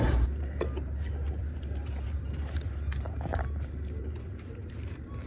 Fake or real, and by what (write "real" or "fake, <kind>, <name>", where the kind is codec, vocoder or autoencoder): fake, vocoder, BigVGAN v2